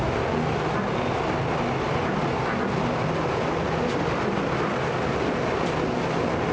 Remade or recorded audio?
recorded